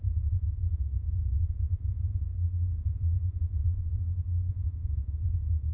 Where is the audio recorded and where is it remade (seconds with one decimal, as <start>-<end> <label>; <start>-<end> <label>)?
0.0-2.3 remade; 2.3-2.8 recorded; 2.8-4.0 remade; 4.0-4.5 recorded; 4.5-5.7 remade